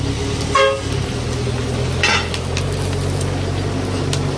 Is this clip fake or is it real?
real